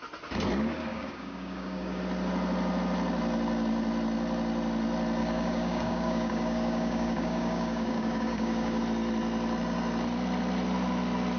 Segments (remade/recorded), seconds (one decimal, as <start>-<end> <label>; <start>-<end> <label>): 0.0-0.9 recorded; 0.9-2.0 remade; 2.0-5.2 recorded; 5.2-8.8 remade; 8.8-11.4 recorded